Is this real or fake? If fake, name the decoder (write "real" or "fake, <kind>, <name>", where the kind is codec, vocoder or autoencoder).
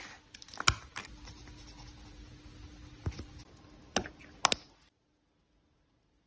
real